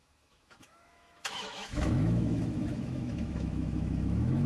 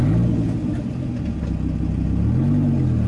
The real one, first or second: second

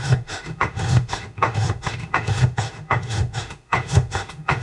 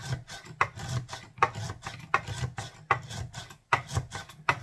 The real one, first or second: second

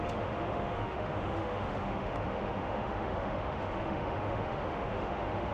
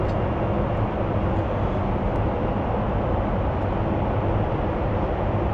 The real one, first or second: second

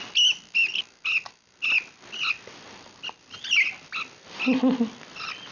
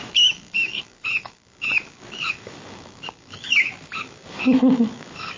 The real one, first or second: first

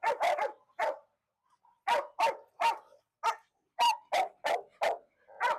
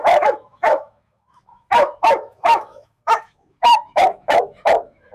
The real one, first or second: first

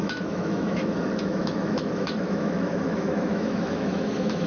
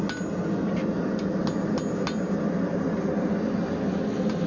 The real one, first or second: second